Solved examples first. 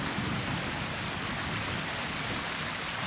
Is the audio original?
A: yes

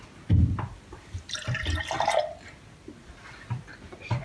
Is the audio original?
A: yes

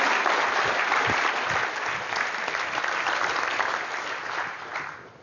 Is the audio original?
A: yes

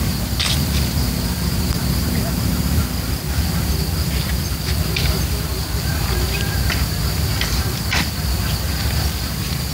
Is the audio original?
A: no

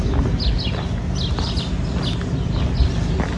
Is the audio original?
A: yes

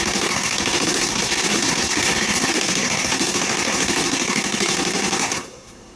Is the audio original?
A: no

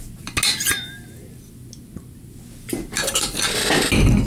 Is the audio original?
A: yes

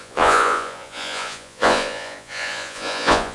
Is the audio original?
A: no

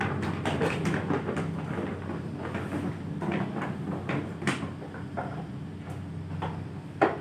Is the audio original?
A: no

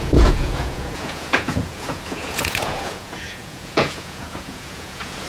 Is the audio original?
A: no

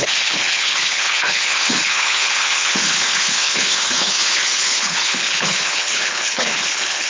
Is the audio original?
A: no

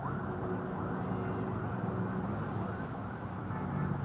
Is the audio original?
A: yes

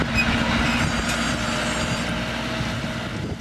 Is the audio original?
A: yes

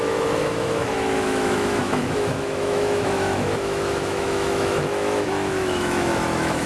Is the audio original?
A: no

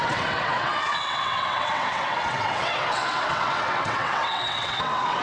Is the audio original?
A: no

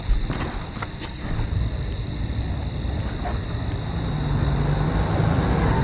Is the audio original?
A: yes